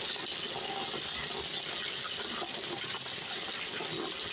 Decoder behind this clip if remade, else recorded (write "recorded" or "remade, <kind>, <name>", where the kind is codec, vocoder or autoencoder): recorded